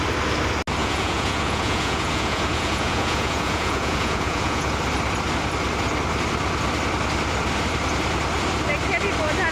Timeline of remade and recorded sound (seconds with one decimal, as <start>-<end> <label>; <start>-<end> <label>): 0.0-0.8 recorded; 0.8-4.7 remade; 4.7-9.5 recorded